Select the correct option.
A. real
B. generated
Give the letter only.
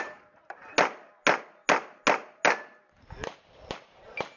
A